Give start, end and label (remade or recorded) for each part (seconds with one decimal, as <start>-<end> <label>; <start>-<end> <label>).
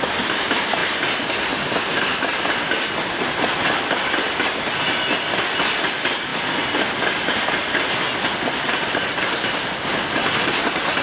0.0-11.0 recorded